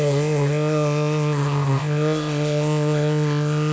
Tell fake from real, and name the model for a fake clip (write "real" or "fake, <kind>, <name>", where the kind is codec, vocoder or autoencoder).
fake, codec, ZipCodec